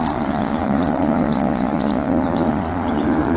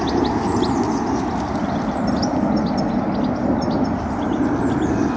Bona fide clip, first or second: second